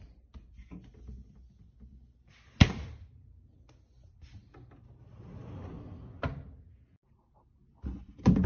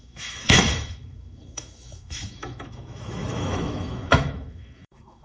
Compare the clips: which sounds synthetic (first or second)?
second